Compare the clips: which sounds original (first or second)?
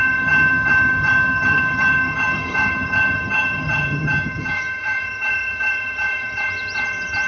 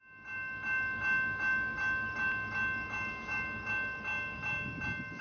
second